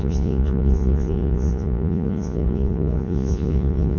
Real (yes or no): no